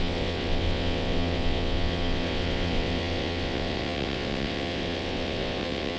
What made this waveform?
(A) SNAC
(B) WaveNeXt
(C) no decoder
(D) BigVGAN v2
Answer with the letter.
B